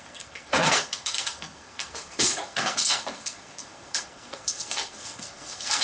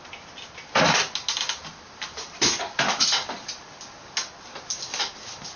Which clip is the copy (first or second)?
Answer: first